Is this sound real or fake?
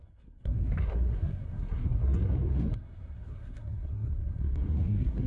fake